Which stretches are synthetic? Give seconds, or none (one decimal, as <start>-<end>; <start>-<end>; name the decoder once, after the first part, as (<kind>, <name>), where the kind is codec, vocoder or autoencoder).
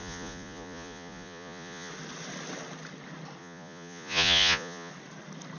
0.0-1.9 (vocoder, Vocos); 3.4-4.9